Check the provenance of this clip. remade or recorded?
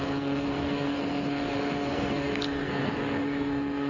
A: remade